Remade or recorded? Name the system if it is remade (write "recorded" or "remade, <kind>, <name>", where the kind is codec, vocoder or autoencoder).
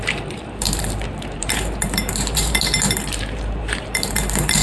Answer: remade, vocoder, BigVGAN v2